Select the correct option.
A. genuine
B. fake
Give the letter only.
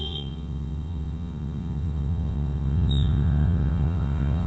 B